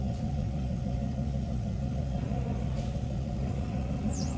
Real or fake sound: fake